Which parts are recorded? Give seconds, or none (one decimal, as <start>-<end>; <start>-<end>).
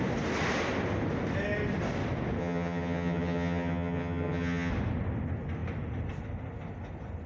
0.0-2.4; 4.7-7.3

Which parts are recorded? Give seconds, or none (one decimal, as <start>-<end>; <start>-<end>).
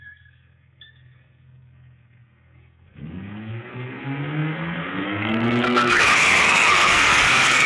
none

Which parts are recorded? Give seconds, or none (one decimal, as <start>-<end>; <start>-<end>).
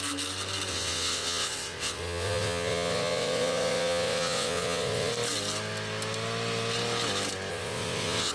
0.0-0.7; 5.1-7.5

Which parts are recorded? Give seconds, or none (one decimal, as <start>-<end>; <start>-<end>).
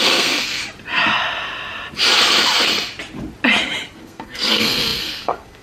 0.6-4.0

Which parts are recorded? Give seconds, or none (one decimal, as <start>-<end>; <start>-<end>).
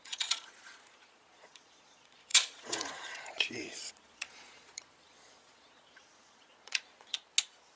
7.2-7.8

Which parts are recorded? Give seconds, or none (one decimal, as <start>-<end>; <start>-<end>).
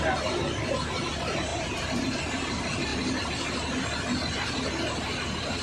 0.0-1.5; 2.2-5.6